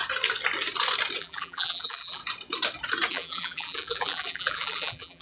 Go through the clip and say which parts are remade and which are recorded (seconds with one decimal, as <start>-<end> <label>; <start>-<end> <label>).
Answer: 0.0-1.2 recorded; 1.2-2.2 remade; 2.2-3.1 recorded; 3.1-5.2 remade